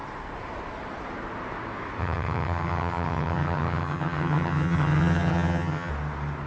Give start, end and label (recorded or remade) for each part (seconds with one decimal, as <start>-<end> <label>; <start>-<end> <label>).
0.0-2.0 recorded; 2.0-5.9 remade; 5.9-6.5 recorded